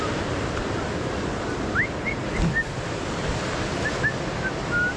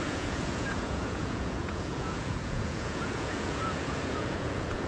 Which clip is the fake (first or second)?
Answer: second